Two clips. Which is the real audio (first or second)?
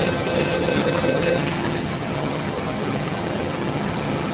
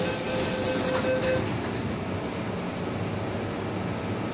second